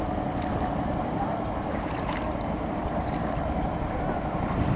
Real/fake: real